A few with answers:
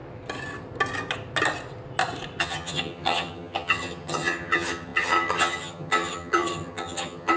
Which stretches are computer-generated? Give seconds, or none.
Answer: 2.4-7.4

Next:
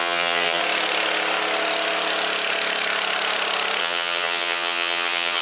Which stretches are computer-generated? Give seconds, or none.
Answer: 0.0-0.6; 3.8-5.4

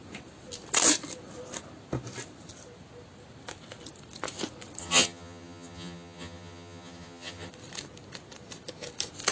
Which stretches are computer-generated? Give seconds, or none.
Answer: 4.8-7.5

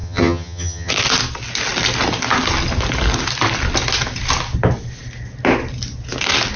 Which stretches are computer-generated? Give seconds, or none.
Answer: 0.0-0.9